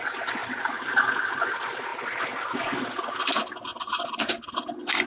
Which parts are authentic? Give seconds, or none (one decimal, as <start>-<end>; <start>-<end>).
0.0-0.4; 1.1-1.9; 3.2-3.7